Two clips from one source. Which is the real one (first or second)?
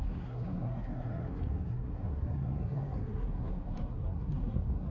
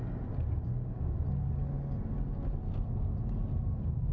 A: second